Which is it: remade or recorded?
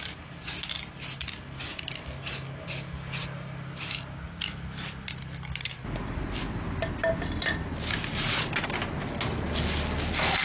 recorded